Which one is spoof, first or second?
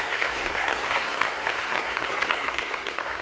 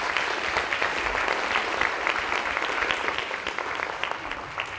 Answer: first